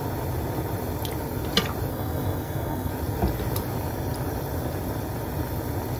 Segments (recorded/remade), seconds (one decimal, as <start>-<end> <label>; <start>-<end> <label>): 0.0-1.9 recorded; 1.9-2.9 remade; 2.9-6.0 recorded